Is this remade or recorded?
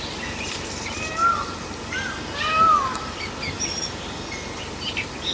recorded